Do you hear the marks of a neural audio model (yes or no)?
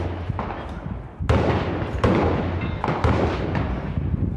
no